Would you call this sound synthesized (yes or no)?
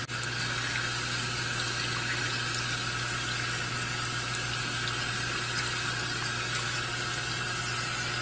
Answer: no